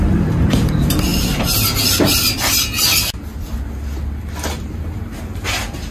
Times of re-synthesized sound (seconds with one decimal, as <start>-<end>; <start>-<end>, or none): 0.0-1.1; 4.6-5.9